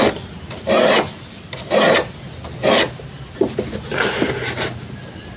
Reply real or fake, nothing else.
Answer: real